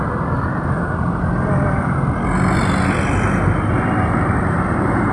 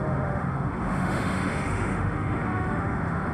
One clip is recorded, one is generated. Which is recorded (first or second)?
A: first